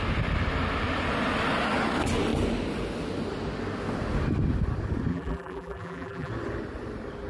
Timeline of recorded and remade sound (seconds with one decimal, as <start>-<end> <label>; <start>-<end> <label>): 0.0-5.1 recorded; 5.1-6.3 remade; 6.3-7.3 recorded

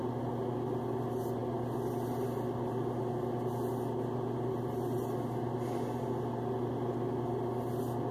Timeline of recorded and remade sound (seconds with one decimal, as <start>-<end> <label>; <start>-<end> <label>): 0.0-8.1 recorded

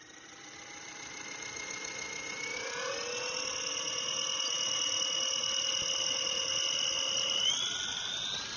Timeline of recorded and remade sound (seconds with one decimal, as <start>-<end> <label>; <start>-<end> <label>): 0.0-8.6 recorded

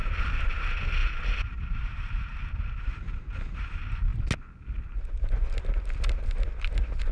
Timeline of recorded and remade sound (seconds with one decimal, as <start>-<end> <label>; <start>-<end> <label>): 0.0-1.0 recorded; 1.0-2.5 remade; 2.5-7.1 recorded

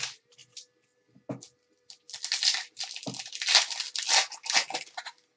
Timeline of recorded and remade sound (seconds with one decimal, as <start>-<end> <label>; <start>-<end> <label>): 0.0-5.4 recorded